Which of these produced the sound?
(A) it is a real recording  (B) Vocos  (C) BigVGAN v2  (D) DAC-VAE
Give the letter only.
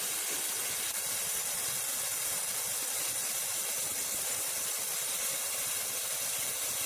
A